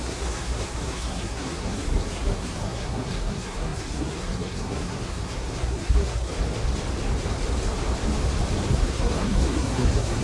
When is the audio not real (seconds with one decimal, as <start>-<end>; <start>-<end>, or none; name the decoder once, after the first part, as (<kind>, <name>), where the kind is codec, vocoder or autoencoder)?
0.0-6.3 (codec, SNAC); 8.7-10.2